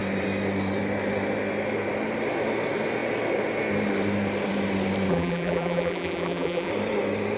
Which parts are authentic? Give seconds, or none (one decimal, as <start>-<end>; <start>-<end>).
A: 0.0-5.1; 6.7-7.4